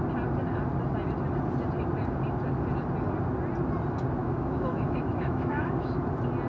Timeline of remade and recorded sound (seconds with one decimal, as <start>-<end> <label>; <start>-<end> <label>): 0.0-4.2 recorded; 4.2-6.0 remade; 6.0-6.5 recorded